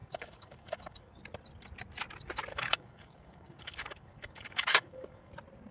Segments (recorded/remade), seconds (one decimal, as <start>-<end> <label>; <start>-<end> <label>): 0.0-1.2 remade; 1.2-2.5 recorded; 2.5-5.3 remade; 5.3-5.7 recorded